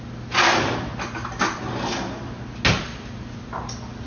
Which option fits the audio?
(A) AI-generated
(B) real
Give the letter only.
B